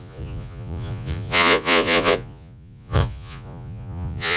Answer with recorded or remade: remade